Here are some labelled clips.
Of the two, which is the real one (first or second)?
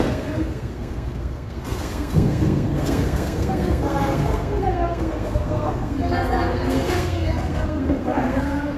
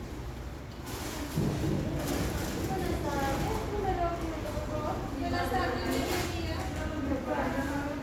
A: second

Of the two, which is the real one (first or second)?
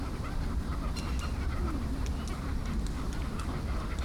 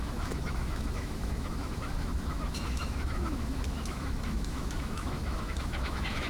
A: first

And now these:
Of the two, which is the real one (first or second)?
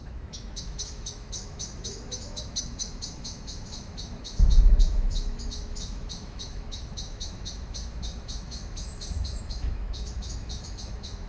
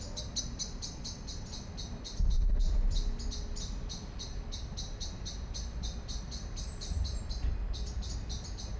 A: second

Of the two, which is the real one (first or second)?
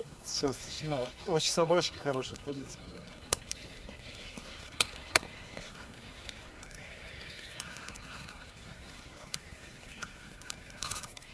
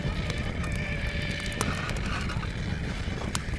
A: second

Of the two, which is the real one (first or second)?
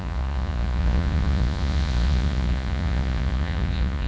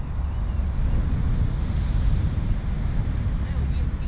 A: second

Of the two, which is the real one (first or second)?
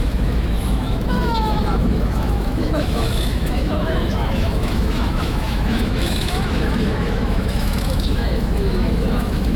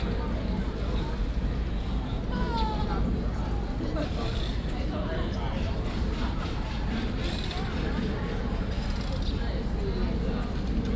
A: second